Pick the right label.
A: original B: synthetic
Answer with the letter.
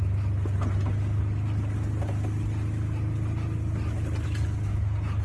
A